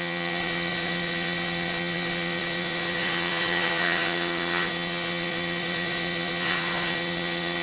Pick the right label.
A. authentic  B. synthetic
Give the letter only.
B